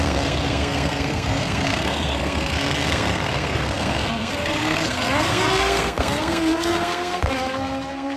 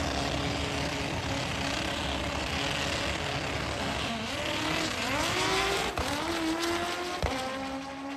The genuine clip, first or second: second